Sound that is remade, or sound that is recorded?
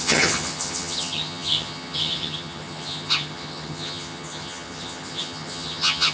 remade